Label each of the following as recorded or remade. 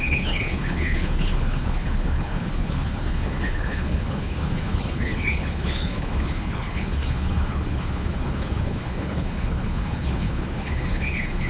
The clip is remade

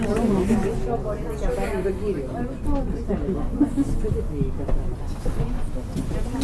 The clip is recorded